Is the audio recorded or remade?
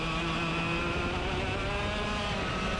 recorded